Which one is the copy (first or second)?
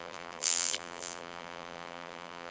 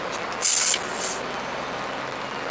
first